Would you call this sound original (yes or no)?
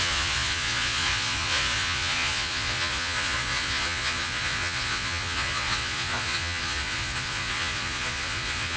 no